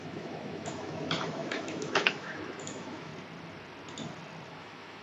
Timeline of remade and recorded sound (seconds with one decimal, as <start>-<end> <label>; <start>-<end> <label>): 0.0-3.1 remade; 3.1-4.5 recorded; 4.5-5.0 remade